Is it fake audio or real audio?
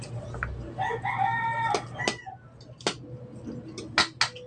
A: real